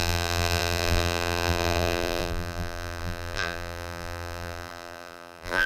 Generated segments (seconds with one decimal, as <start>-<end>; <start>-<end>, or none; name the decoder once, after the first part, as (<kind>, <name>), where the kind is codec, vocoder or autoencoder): 0.0-5.7 (vocoder, BigVGAN v2)

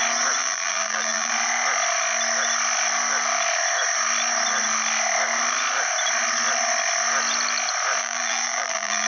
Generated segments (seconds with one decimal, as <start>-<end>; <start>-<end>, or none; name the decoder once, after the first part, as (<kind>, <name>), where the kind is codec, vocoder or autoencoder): 0.4-1.3 (vocoder, BigVGAN v2); 8.0-9.1

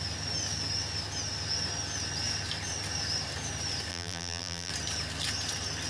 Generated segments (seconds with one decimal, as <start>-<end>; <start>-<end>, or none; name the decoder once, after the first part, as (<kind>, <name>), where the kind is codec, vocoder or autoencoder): 3.9-4.7 (vocoder, BigVGAN v2)